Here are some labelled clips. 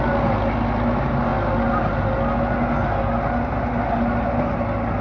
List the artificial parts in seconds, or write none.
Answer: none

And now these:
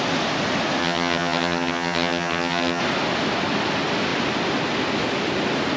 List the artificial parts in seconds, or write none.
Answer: 0.8-2.8 (vocoder, HiFi-GAN)

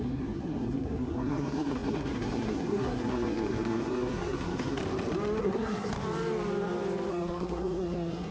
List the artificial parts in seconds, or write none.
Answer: 0.0-4.8 (codec, SNAC); 5.4-5.9; 7.1-8.3

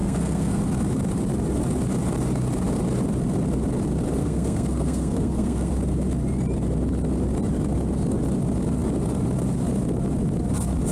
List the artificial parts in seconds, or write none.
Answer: 0.0-0.6 (codec, SNAC); 4.2-5.7